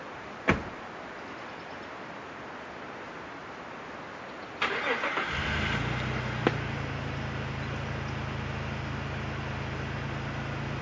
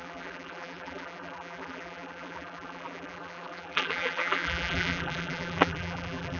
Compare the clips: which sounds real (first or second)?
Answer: first